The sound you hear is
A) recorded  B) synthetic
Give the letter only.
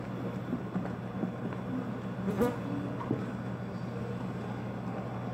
A